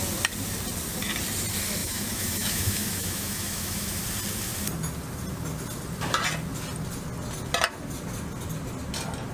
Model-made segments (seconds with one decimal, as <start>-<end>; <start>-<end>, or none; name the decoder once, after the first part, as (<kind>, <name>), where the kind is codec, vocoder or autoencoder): 1.8-4.0 (autoencoder, DAC-VAE)